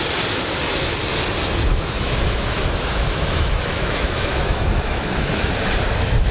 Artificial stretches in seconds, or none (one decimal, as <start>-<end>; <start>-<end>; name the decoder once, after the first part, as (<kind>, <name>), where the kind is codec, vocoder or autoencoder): 1.7-5.5 (autoencoder, DAC-VAE)